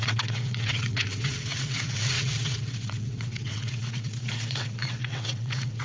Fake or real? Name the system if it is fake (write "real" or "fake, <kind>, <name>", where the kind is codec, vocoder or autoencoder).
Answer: fake, vocoder, WaveNeXt